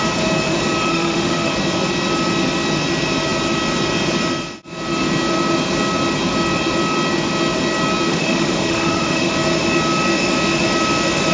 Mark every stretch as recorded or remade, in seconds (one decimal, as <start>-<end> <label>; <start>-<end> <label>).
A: 0.0-0.9 recorded; 0.9-1.5 remade; 1.5-8.1 recorded; 8.1-9.3 remade; 9.3-11.3 recorded